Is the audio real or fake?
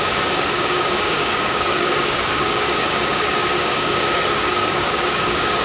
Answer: fake